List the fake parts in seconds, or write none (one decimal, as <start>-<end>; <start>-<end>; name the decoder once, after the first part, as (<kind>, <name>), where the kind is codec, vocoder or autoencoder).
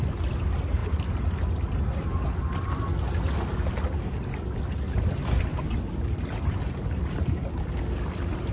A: none